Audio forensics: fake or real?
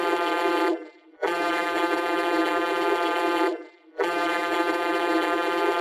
fake